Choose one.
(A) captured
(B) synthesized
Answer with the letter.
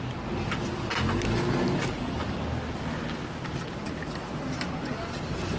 A